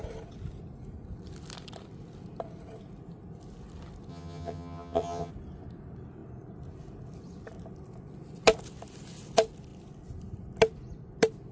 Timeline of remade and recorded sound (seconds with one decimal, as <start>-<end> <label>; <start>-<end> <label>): 0.0-4.1 recorded; 4.1-5.3 remade; 5.3-11.5 recorded